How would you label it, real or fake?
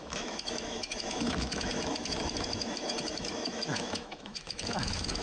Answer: fake